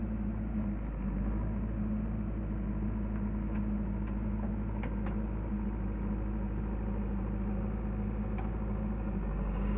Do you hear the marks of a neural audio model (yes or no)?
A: no